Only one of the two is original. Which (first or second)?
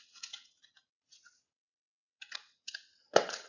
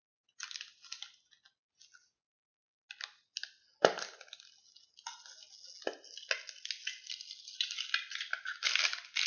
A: second